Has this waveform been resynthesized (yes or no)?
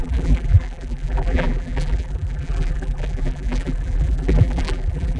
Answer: yes